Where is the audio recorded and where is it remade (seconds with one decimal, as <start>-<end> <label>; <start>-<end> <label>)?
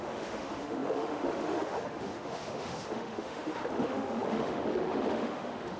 0.0-5.8 remade